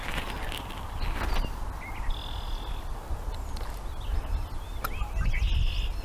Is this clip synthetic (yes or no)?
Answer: no